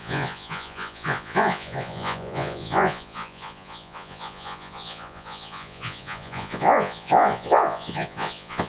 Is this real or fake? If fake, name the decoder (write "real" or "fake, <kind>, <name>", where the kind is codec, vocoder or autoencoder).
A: fake, vocoder, Vocos